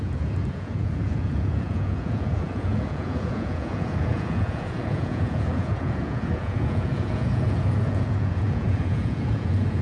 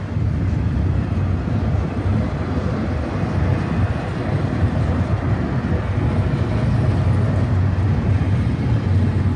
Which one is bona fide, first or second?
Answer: second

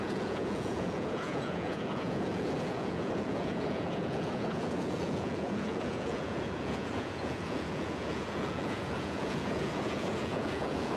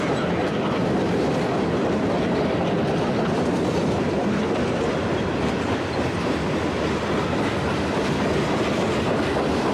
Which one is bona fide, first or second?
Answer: second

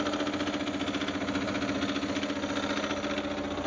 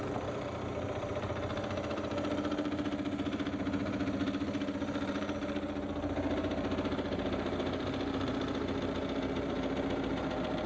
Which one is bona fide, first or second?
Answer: first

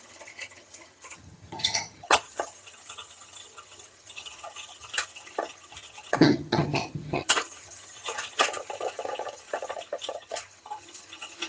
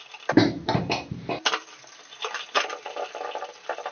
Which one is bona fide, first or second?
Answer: second